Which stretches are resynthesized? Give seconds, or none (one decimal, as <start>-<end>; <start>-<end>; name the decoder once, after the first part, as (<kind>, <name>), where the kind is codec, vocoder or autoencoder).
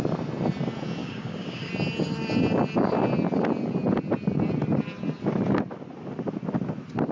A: 1.0-1.7 (codec, DAC)